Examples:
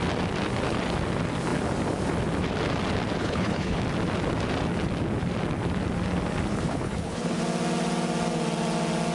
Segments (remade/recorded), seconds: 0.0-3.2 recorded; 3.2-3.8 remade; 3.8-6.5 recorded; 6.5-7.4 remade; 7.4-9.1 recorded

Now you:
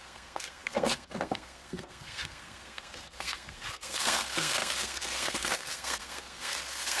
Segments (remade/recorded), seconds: 0.0-7.0 remade

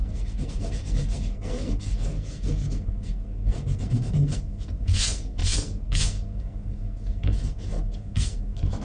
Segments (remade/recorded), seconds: 0.0-8.8 remade

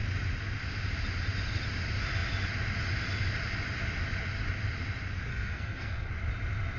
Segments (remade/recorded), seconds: 0.0-5.3 recorded; 5.3-6.1 remade; 6.1-6.8 recorded

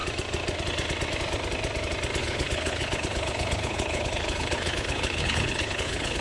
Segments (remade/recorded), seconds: 0.0-2.2 recorded; 2.2-6.2 remade